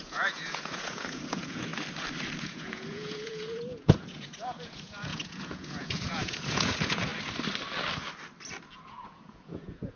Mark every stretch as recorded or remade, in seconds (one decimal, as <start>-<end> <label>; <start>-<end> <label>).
0.0-1.7 remade; 1.7-2.4 recorded; 2.4-7.1 remade; 7.1-8.8 recorded; 8.8-10.0 remade